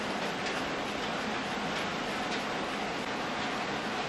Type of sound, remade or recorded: recorded